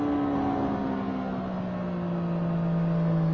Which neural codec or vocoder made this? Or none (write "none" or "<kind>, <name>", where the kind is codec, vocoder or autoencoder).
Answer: none